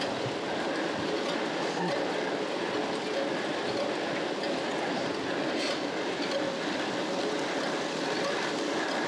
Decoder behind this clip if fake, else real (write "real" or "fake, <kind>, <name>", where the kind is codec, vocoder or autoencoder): real